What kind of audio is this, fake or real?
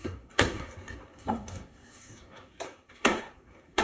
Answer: fake